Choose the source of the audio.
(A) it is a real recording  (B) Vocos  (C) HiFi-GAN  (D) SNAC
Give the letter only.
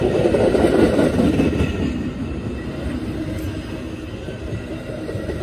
A